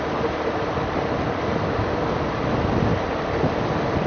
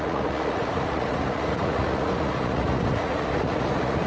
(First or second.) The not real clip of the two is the second